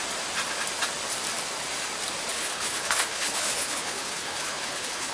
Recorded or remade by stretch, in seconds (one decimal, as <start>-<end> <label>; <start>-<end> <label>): 0.0-2.3 recorded; 2.3-5.1 remade